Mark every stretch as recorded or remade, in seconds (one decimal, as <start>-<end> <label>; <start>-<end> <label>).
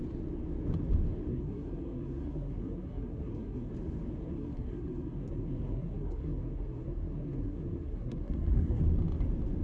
0.0-1.3 recorded; 1.3-3.7 remade; 3.7-4.2 recorded; 4.2-8.8 remade; 8.8-9.6 recorded